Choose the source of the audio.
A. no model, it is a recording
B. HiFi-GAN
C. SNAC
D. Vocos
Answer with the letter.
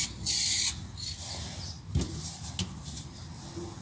A